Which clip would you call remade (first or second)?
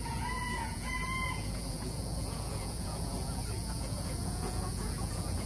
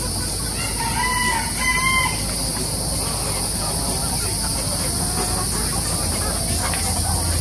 first